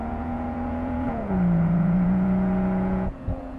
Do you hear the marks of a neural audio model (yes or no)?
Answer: yes